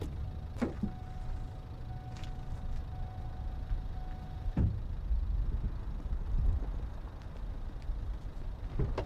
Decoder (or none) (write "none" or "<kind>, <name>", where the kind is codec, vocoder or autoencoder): none